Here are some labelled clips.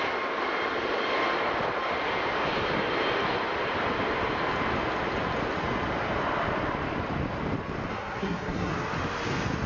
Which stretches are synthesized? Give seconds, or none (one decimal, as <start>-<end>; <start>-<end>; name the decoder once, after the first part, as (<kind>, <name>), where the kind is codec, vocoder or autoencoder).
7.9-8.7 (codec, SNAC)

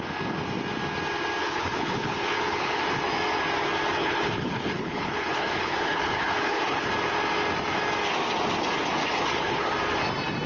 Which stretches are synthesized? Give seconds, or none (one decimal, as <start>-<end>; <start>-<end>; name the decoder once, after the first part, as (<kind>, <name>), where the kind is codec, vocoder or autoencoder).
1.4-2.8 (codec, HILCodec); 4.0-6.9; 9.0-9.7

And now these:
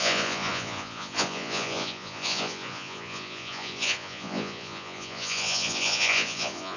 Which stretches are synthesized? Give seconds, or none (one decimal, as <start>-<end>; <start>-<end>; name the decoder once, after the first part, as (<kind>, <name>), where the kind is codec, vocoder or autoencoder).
0.0-6.8 (vocoder, Vocos)